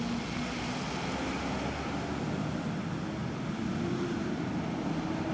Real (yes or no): yes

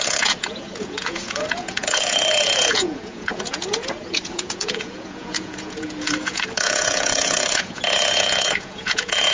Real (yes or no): no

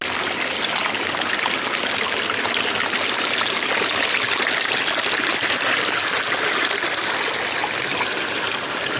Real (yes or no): yes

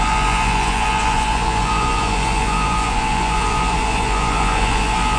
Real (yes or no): no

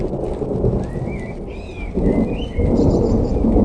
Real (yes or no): yes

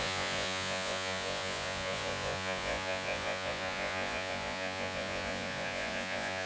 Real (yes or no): no